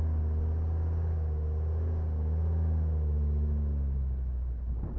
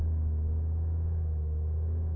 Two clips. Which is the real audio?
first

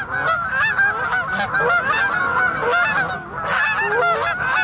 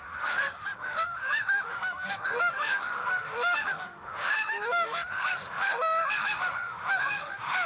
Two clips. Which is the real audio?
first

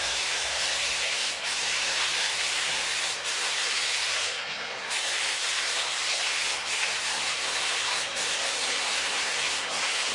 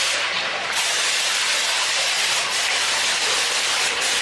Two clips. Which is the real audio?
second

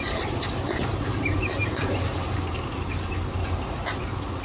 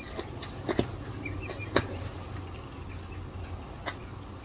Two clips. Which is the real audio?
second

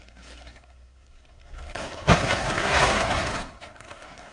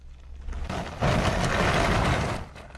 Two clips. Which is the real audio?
second